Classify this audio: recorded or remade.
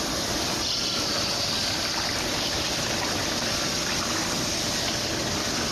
recorded